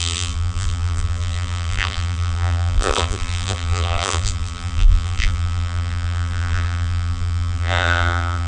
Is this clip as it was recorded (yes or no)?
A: no